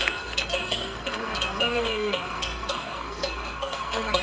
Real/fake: fake